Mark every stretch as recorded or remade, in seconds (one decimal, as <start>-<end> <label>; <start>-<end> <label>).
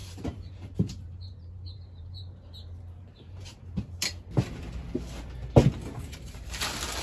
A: 0.0-3.9 remade; 3.9-7.0 recorded